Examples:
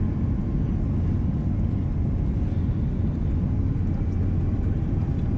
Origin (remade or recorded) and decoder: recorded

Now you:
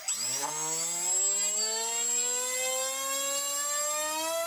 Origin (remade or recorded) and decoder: recorded